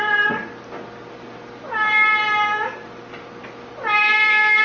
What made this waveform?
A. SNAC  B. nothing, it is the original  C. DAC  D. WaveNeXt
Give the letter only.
B